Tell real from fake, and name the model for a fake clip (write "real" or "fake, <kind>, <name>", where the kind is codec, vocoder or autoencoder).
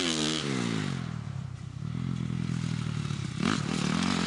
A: real